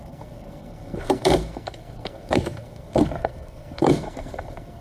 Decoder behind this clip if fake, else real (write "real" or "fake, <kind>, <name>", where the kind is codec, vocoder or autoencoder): fake, codec, SNAC